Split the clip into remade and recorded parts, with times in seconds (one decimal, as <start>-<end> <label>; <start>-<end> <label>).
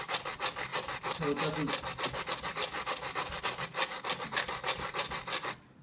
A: 0.0-5.8 recorded